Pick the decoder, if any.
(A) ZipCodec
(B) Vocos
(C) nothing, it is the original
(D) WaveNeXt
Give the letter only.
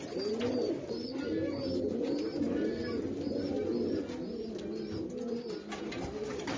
C